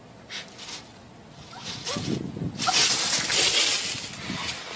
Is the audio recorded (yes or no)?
yes